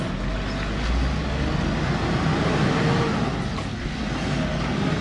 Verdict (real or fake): real